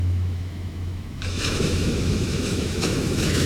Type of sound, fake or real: fake